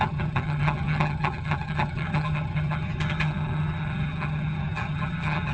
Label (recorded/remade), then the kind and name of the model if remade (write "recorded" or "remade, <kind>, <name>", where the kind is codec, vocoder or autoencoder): remade, vocoder, HiFi-GAN